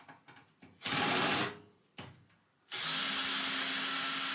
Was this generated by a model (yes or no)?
no